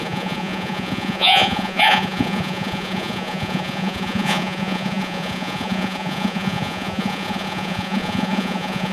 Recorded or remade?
remade